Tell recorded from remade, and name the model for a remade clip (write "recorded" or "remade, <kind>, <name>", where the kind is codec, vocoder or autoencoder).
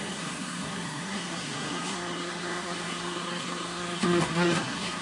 remade, codec, SNAC